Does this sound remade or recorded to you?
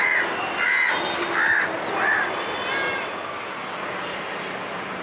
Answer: recorded